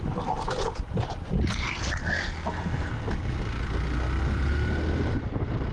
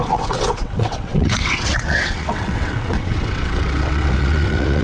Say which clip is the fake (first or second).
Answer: second